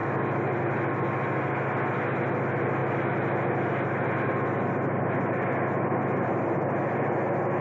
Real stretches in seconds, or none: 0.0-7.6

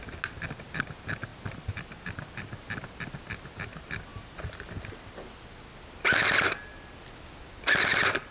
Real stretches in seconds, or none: 0.0-8.3

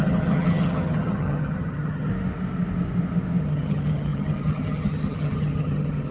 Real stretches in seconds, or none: 2.1-3.4

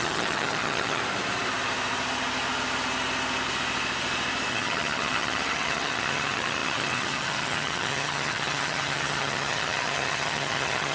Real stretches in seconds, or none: 1.0-4.5

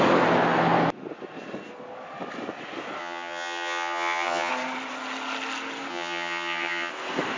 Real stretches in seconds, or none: 0.0-3.0; 4.5-5.9; 6.9-7.4